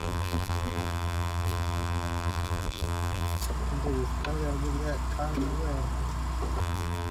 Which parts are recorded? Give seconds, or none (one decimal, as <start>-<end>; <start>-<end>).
3.4-6.6